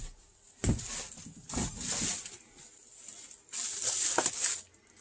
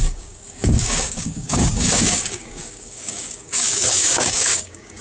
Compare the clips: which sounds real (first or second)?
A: first